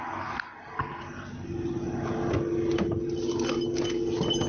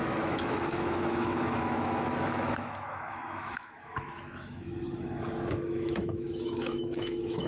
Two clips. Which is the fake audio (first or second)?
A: second